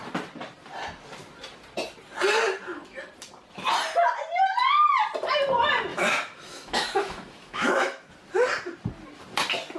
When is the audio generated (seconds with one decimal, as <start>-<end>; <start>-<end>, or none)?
5.9-8.1